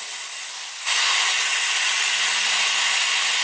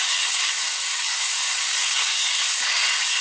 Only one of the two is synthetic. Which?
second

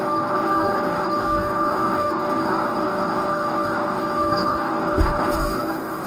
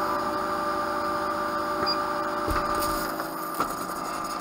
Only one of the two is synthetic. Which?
first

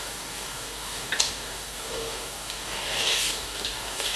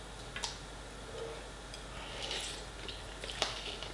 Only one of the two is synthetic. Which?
first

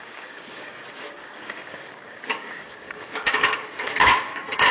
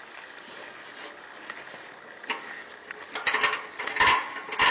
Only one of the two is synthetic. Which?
first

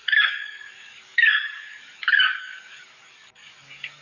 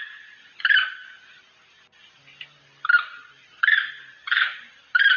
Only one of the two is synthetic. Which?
first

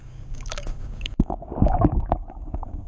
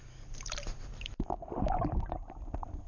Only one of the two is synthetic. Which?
first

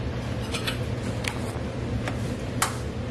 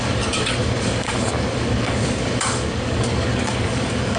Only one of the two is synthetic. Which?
second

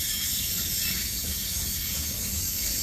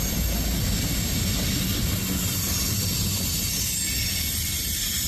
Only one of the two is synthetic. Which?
first